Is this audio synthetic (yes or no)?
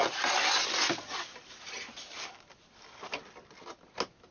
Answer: no